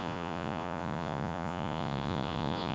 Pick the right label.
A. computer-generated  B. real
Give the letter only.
A